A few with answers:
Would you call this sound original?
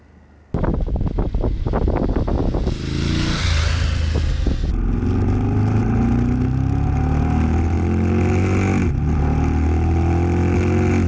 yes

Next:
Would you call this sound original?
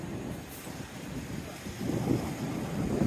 yes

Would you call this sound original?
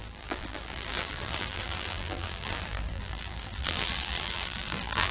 no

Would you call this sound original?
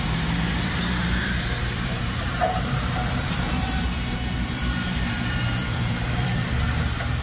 no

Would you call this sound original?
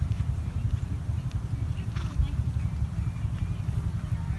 yes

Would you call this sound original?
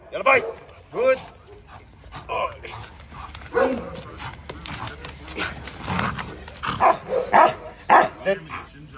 yes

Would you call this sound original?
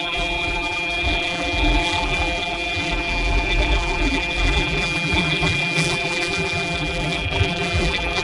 no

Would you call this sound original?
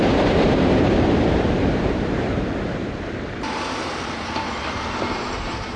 no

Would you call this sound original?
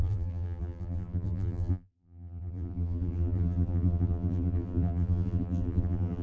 no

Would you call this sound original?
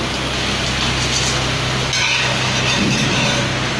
yes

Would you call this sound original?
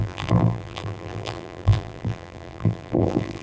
no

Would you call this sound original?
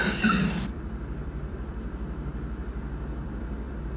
no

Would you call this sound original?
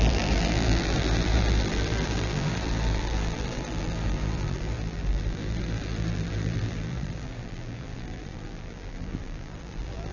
no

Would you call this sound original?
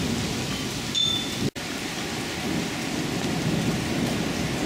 yes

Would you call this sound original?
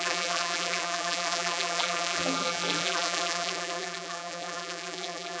no